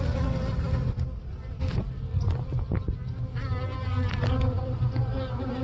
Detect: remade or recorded recorded